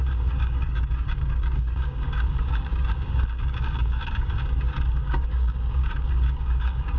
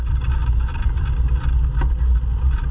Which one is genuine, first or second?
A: second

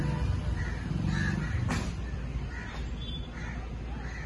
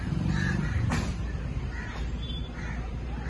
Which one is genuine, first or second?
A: first